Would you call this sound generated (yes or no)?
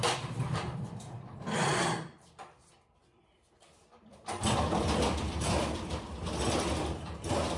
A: yes